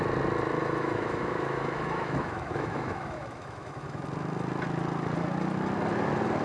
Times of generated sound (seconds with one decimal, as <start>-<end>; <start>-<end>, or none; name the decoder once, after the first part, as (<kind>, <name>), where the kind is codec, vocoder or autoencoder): 0.6-4.0 (autoencoder, DAC-VAE)

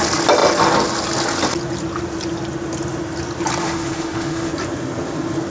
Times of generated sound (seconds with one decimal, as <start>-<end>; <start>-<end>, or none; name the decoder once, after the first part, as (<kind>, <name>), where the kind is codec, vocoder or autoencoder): 3.6-4.5 (autoencoder, DAC-VAE)

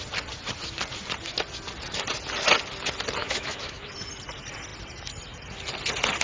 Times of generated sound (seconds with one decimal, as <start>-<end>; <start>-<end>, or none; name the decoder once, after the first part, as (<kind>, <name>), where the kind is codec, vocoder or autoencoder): 3.2-3.9 (autoencoder, DAC-VAE)

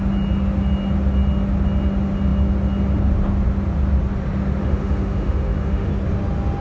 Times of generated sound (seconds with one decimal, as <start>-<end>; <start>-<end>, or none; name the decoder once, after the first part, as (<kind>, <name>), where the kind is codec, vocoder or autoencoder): 4.6-5.9 (autoencoder, DAC-VAE)

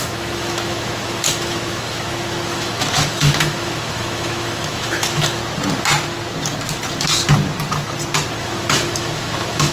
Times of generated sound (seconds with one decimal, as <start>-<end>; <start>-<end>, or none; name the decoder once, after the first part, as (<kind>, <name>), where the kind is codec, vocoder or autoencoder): 0.0-5.4 (autoencoder, DAC-VAE); 8.4-9.7

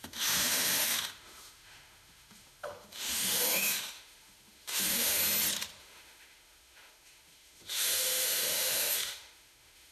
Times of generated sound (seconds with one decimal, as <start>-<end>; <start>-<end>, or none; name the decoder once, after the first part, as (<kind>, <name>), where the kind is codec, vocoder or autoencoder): 0.0-5.2 (autoencoder, DAC-VAE); 5.8-9.9